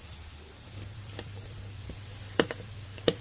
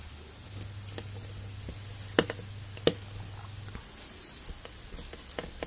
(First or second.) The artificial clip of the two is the first